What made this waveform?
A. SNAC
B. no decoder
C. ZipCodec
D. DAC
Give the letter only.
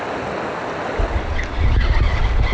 B